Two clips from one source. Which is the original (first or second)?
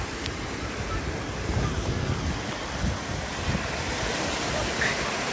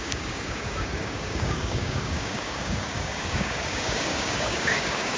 first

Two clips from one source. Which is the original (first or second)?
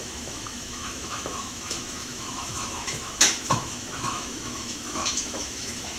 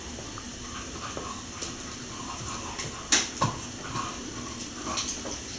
second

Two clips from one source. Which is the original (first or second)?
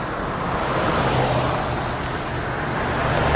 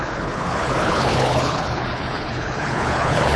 first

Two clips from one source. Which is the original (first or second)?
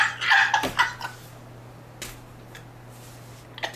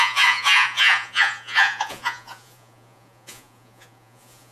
first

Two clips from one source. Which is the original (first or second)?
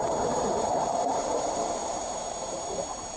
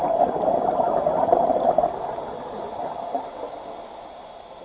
second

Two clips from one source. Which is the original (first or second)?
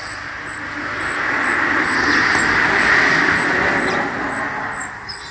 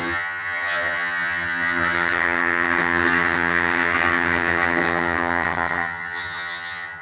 first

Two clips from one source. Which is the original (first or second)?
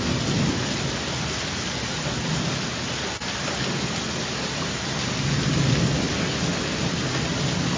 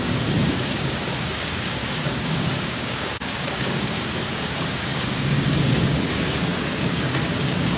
first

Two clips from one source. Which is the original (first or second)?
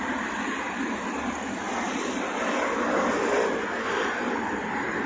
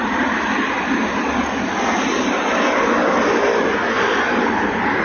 second